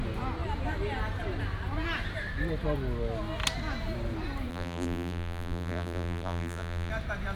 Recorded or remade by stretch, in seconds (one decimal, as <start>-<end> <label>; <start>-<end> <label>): 0.0-4.5 recorded; 4.5-6.9 remade; 6.9-7.4 recorded

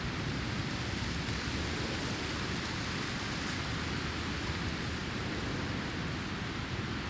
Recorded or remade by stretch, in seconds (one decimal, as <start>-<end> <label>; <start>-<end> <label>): 0.0-5.0 recorded; 5.0-6.3 remade; 6.3-7.1 recorded

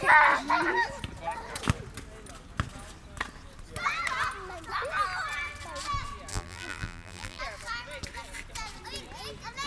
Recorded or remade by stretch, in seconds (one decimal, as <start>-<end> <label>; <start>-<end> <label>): 0.0-6.3 recorded; 6.3-7.4 remade; 7.4-9.7 recorded

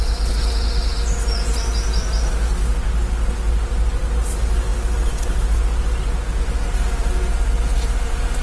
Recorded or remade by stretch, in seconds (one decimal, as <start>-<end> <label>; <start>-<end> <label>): 0.0-8.4 recorded

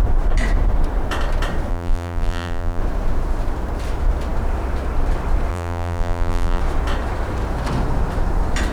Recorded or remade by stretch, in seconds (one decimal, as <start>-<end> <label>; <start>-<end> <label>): 0.0-1.7 recorded; 1.7-2.8 remade; 2.8-5.5 recorded; 5.5-6.6 remade; 6.6-8.7 recorded

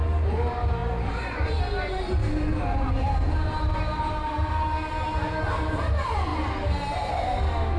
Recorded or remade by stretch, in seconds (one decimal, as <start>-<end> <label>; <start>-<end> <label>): 0.0-2.5 recorded; 2.5-5.4 remade; 5.4-7.8 recorded

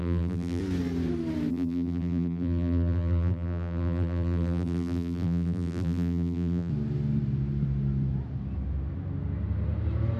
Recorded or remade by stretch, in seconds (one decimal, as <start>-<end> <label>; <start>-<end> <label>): 0.0-0.6 remade; 0.6-1.5 recorded; 1.5-6.7 remade; 6.7-10.2 recorded

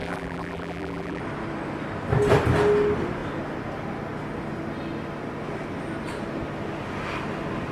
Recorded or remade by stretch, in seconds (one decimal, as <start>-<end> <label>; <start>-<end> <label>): 0.0-1.2 remade; 1.2-7.7 recorded